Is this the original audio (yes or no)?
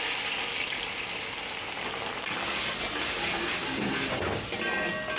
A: yes